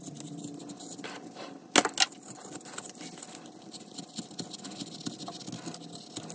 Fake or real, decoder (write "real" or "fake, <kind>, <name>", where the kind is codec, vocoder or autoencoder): real